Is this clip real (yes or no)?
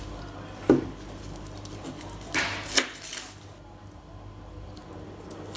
yes